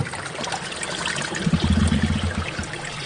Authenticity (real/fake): real